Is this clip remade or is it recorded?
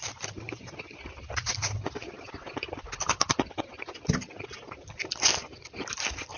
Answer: recorded